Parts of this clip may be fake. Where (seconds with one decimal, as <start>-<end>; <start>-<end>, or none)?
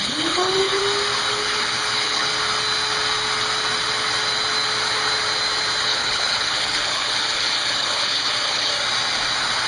0.0-0.8; 1.3-2.3; 5.8-8.7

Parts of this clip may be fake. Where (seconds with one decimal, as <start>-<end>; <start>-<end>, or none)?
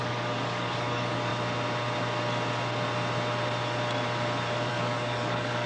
0.0-1.3; 4.7-5.7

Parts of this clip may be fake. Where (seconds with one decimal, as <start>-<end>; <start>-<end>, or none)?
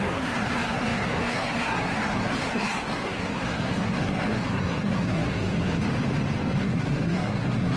0.0-5.8; 6.6-7.8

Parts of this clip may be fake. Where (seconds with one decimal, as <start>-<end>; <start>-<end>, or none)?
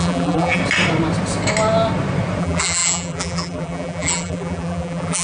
0.0-0.6; 2.4-5.2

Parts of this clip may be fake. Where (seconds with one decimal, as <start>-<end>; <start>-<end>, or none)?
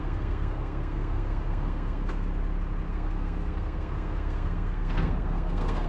0.0-2.3; 2.9-5.9